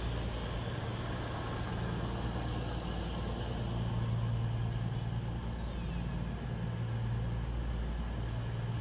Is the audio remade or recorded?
recorded